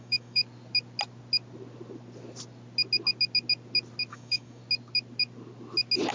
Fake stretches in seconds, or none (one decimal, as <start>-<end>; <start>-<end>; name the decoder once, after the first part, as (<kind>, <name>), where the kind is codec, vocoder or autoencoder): 0.0-0.4 (autoencoder, DAC-VAE); 4.1-4.6

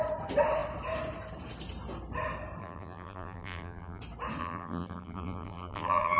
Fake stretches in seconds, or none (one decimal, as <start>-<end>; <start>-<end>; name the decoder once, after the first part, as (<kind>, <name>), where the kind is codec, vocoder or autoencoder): 2.6-4.0 (vocoder, BigVGAN v2); 4.4-6.2

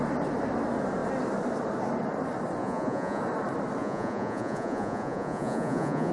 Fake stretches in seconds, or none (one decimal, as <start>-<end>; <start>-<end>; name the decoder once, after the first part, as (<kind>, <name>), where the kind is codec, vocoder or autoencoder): 2.6-3.2 (vocoder, Vocos); 3.8-6.1

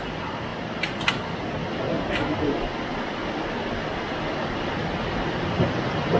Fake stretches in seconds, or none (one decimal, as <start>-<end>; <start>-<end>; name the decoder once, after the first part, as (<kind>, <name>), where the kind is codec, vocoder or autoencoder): none

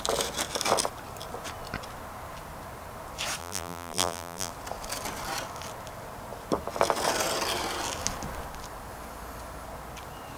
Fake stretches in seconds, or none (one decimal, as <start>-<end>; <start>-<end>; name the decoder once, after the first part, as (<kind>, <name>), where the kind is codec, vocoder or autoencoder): 3.4-4.5 (vocoder, BigVGAN v2)

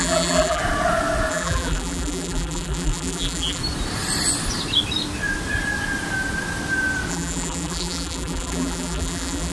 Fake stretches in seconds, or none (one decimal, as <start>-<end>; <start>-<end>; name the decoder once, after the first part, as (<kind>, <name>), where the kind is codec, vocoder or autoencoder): 0.0-0.6 (vocoder, BigVGAN v2); 1.3-3.6; 7.1-9.5

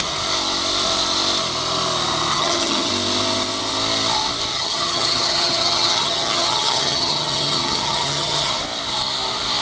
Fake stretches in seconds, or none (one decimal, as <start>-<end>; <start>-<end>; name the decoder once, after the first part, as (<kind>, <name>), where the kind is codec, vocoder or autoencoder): 2.3-2.9 (vocoder, HiFi-GAN); 4.5-8.6

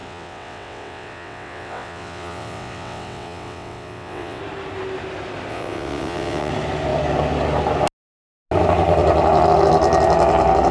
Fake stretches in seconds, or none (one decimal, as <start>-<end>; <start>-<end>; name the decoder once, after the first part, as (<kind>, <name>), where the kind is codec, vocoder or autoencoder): 0.0-4.4 (vocoder, WaveNeXt); 5.5-6.5